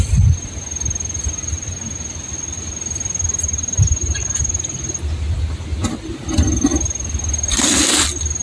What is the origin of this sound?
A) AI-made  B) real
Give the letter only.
B